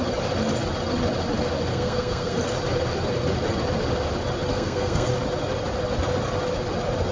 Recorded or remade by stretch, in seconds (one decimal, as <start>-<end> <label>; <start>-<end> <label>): 0.0-1.7 recorded; 1.7-2.4 remade; 2.4-4.5 recorded; 4.5-5.1 remade; 5.1-7.1 recorded